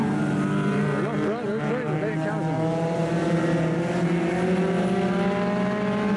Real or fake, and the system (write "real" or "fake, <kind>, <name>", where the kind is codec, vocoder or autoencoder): real